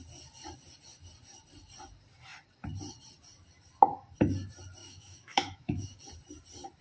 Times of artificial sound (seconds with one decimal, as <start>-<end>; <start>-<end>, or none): 4.8-6.0